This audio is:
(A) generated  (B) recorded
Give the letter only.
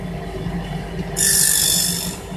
B